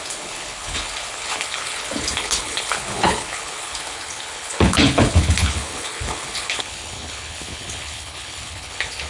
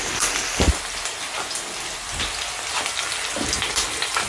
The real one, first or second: second